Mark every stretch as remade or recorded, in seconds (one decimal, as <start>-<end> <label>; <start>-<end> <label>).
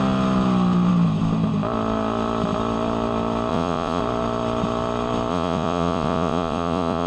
0.0-3.5 recorded; 3.5-4.0 remade; 4.0-5.3 recorded; 5.3-7.1 remade